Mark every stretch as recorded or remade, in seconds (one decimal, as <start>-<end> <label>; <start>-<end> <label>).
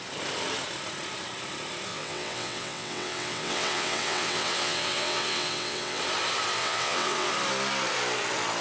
0.0-1.9 recorded; 1.9-6.0 remade; 6.0-6.6 recorded; 6.6-7.3 remade; 7.3-8.6 recorded